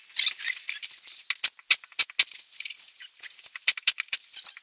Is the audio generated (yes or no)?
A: no